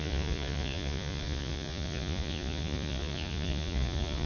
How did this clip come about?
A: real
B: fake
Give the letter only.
B